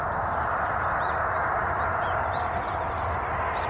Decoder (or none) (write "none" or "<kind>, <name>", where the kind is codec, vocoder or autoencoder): none